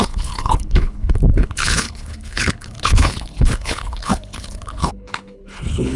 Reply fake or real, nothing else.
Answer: fake